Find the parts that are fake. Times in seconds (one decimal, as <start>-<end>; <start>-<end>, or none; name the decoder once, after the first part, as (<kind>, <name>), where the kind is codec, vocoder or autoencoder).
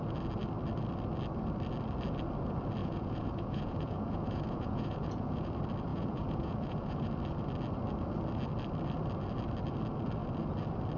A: 2.8-5.5 (vocoder, Vocos); 5.9-7.1